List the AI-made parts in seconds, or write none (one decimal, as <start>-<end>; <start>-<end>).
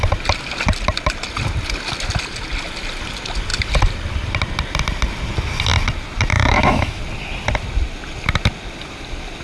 6.3-7.0